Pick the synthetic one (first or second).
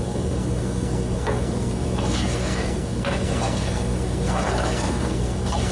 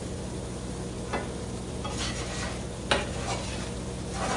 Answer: first